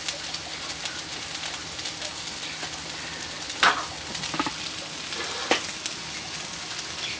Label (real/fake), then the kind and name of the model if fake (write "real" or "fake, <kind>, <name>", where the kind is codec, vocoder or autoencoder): real